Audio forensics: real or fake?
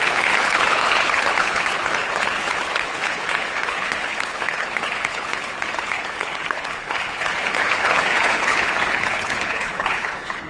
fake